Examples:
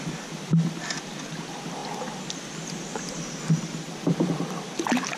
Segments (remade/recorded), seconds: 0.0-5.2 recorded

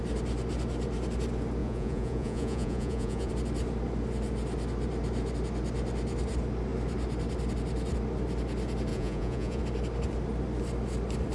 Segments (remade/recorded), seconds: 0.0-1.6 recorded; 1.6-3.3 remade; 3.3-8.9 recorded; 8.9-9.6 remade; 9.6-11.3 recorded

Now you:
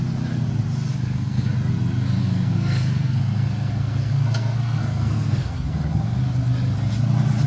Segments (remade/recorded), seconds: 0.0-0.9 recorded; 0.9-1.5 remade; 1.5-2.2 recorded; 2.2-6.2 remade; 6.2-7.5 recorded

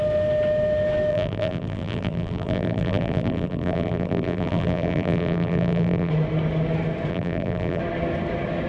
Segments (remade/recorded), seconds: 0.0-1.1 recorded; 1.1-6.1 remade; 6.1-7.1 recorded; 7.1-7.8 remade; 7.8-8.7 recorded